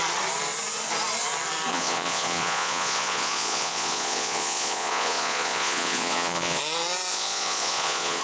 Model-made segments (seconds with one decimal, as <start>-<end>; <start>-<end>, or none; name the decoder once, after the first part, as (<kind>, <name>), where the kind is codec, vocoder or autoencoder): 1.7-6.6 (vocoder, Vocos); 7.1-8.2